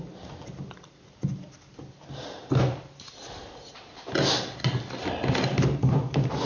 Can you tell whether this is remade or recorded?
recorded